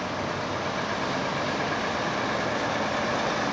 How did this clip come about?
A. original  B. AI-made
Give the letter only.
A